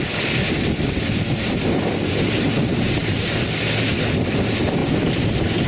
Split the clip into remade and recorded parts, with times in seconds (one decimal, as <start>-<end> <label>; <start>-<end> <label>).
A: 0.0-5.7 recorded